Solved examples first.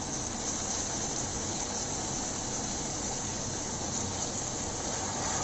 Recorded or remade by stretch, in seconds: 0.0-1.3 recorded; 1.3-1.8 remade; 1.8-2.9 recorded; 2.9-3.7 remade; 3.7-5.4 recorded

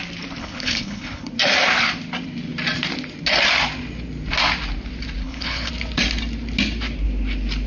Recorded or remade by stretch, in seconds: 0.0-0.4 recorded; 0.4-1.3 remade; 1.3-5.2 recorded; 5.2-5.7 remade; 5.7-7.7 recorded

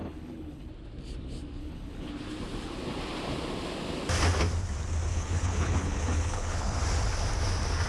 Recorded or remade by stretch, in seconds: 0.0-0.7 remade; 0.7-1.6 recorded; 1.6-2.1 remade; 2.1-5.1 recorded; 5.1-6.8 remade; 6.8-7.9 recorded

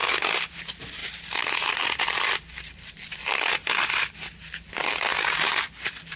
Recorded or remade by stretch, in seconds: 0.0-6.2 recorded

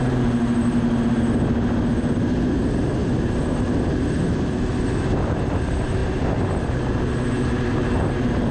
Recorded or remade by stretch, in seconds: 0.0-8.5 recorded

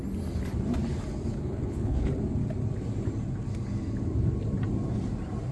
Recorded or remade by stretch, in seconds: 0.0-1.3 recorded; 1.3-2.2 remade; 2.2-5.5 recorded